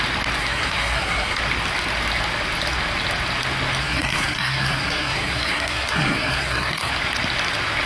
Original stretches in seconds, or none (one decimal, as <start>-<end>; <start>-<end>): 0.0-0.4; 1.4-3.8; 6.9-7.9